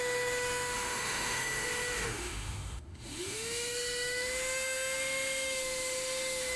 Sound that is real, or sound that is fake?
fake